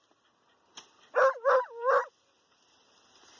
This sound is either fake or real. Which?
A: real